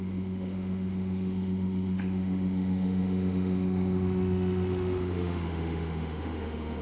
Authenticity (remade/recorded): remade